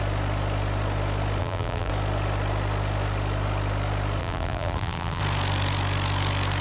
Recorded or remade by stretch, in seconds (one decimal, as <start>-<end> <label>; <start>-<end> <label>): 0.0-1.4 recorded; 1.4-1.9 remade; 1.9-4.2 recorded; 4.2-5.2 remade; 5.2-6.6 recorded